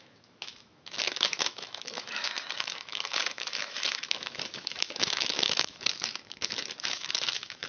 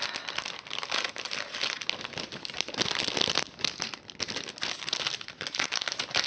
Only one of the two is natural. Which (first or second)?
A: second